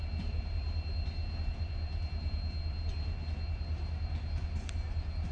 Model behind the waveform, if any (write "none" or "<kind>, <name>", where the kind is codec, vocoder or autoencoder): none